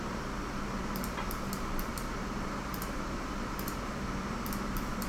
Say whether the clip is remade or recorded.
remade